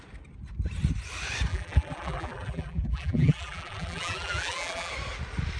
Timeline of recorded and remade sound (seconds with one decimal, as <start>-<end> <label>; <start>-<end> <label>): 0.0-1.5 recorded; 1.5-4.9 remade; 4.9-5.6 recorded